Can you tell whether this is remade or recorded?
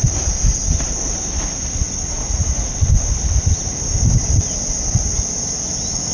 recorded